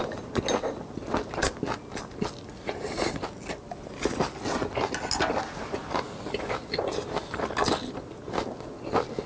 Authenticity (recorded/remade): recorded